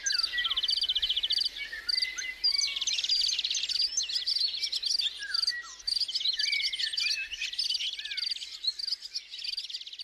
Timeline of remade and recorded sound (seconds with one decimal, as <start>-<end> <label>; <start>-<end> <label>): 0.0-10.0 recorded